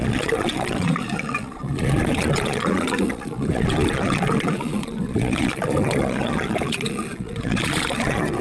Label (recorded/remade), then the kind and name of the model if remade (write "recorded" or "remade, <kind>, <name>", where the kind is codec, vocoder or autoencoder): remade, vocoder, Vocos